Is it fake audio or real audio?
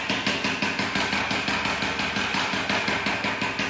real